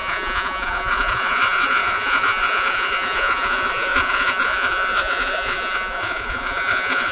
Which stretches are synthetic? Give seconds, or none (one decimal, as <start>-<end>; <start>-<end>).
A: 0.0-7.1